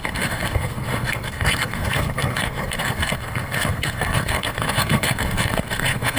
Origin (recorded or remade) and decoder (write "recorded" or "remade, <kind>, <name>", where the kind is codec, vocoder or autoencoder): remade, codec, SNAC